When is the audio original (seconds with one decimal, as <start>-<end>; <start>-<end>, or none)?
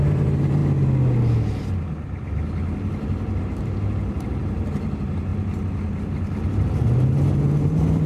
0.6-3.4; 5.3-6.8